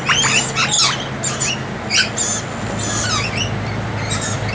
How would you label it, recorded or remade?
recorded